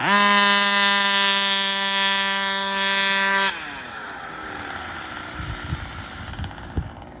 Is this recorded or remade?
recorded